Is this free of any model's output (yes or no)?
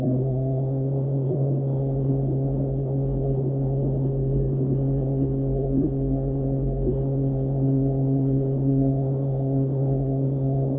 no